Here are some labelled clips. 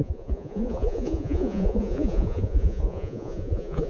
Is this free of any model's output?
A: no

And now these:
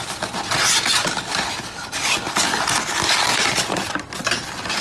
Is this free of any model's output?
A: yes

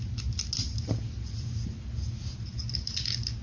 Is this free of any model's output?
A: yes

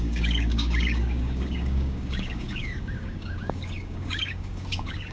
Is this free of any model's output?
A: no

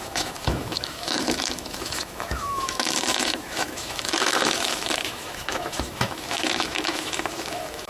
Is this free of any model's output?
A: no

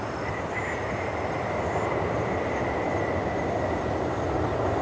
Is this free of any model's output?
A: yes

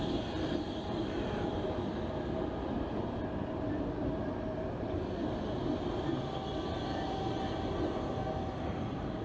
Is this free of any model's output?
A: yes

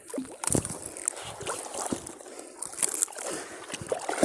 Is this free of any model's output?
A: yes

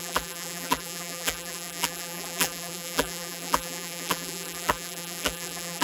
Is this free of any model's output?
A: no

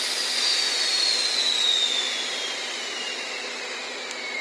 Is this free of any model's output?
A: yes